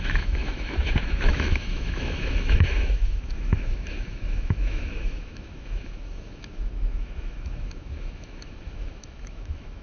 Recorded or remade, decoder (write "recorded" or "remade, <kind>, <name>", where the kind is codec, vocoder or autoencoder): remade, autoencoder, DAC-VAE